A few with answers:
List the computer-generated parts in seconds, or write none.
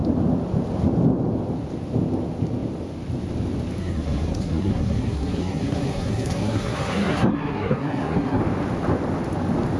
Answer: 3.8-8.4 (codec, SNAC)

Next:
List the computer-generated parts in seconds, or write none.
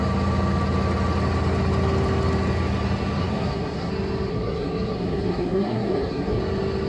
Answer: 3.2-3.9 (codec, SNAC); 4.3-6.4